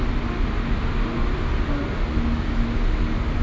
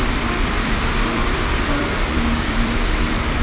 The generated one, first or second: second